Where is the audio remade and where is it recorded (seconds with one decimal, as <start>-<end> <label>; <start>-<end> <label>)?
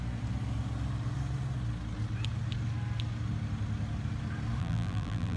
0.0-4.6 recorded; 4.6-5.4 remade